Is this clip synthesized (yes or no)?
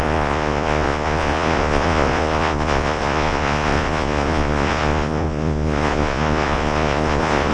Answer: yes